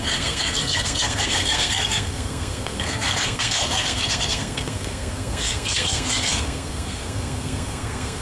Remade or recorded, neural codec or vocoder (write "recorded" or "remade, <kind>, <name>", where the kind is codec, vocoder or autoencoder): remade, codec, SNAC